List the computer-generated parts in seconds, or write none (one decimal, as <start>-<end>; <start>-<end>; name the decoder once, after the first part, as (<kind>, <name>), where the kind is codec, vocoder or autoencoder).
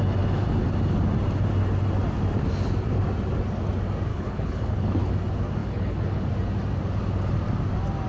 4.1-5.1 (codec, HILCodec); 5.6-6.3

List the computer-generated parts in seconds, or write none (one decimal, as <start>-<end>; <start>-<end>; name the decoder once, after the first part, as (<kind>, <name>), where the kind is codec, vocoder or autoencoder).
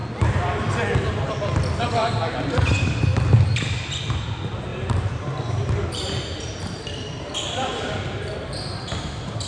4.7-8.9 (vocoder, BigVGAN v2)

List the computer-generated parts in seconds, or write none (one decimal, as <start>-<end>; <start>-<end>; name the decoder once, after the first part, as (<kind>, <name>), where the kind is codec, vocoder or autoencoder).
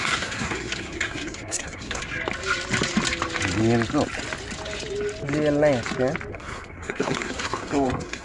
0.0-2.0 (codec, SNAC); 6.3-8.2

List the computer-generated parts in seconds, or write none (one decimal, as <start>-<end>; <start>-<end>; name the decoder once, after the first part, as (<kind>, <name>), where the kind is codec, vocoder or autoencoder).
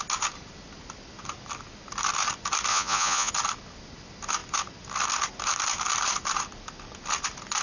2.7-3.3 (vocoder, Vocos)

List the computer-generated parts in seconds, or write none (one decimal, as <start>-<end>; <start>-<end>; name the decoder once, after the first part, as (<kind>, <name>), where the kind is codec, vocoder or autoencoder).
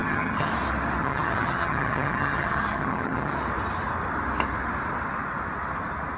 0.0-0.5 (vocoder, HiFi-GAN); 1.0-3.4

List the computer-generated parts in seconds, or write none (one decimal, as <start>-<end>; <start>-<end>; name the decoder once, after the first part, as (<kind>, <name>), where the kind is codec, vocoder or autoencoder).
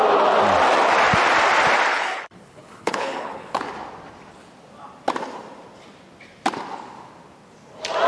1.9-3.6 (codec, HILCodec)